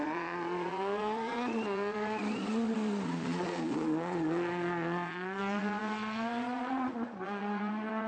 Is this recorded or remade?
remade